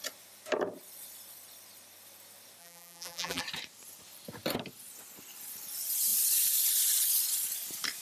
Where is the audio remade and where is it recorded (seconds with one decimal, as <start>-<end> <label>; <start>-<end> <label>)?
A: 0.0-2.6 recorded; 2.6-3.4 remade; 3.4-8.0 recorded